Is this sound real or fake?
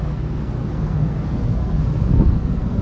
fake